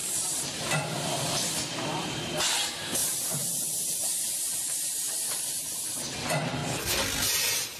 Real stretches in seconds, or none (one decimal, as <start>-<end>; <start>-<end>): 0.0-3.0; 5.8-7.8